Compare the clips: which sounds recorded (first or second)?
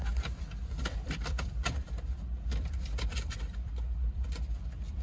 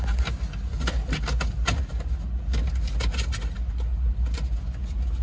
second